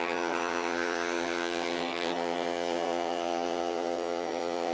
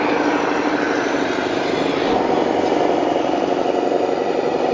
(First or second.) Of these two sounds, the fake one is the first